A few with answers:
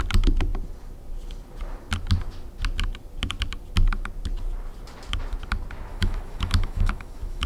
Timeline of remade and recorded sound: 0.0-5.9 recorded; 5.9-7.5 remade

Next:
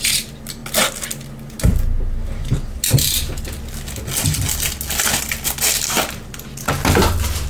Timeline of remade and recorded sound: 0.0-7.5 recorded

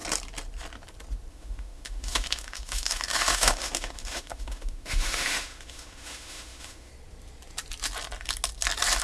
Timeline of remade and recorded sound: 0.0-1.3 recorded; 1.3-6.9 remade; 6.9-9.0 recorded

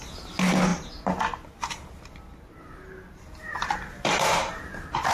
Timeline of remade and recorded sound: 0.0-5.1 recorded